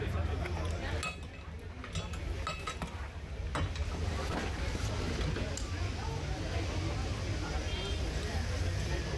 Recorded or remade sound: recorded